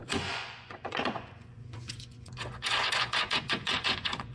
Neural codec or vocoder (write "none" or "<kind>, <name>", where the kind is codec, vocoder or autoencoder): vocoder, Vocos